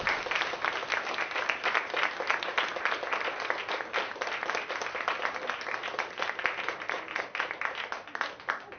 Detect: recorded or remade recorded